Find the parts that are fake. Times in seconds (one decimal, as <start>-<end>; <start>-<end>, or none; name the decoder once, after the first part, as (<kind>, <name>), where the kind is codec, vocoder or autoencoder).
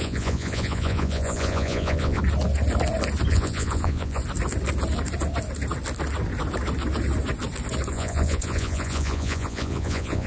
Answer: 0.0-2.2 (vocoder, Vocos); 3.3-4.2; 7.9-10.3